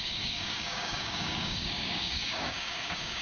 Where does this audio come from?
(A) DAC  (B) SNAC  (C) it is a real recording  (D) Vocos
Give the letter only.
A